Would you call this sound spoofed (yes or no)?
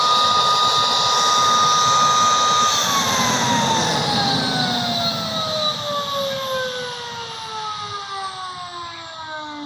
no